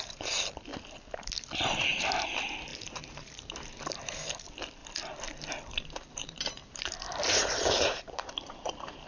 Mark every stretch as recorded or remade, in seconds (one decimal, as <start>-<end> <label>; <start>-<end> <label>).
0.0-0.7 remade; 0.7-1.9 recorded; 1.9-4.8 remade; 4.8-5.7 recorded; 5.7-9.1 remade